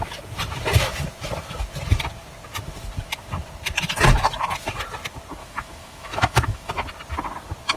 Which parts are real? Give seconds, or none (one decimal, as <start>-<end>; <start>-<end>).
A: 0.0-5.4; 6.7-7.8